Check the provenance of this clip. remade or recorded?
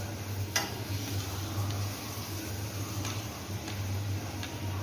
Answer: recorded